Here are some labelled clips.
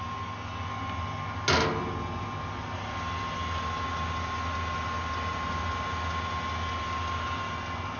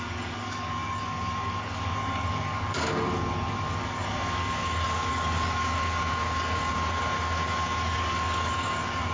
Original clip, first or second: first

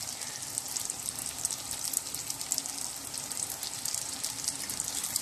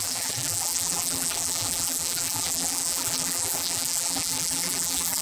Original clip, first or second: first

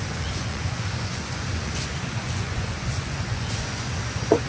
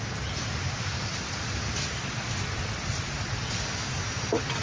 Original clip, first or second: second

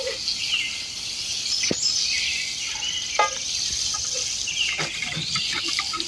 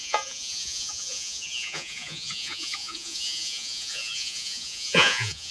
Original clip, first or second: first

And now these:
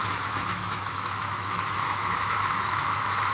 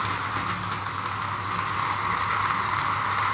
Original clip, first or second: second